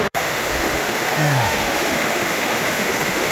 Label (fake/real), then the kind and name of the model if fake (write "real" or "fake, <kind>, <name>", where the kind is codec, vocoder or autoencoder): fake, autoencoder, DAC-VAE